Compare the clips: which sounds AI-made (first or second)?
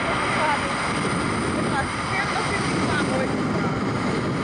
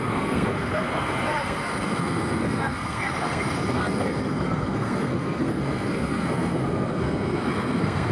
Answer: second